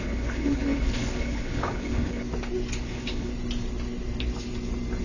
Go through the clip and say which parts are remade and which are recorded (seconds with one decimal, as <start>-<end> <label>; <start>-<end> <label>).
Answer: 0.0-2.2 remade; 2.2-2.8 recorded; 2.8-3.3 remade; 3.3-5.0 recorded